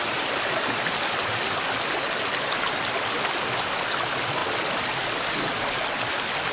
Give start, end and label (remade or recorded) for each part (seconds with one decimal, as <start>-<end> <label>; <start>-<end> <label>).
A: 0.0-6.5 recorded